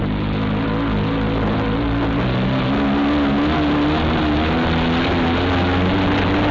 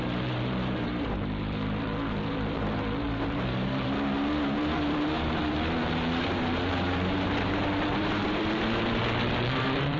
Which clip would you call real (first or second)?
first